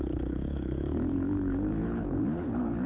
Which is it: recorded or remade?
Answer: remade